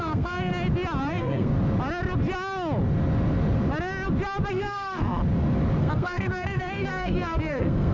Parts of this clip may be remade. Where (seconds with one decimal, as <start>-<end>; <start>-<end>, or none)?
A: 0.0-0.5; 1.1-1.5; 4.5-5.2; 5.8-7.9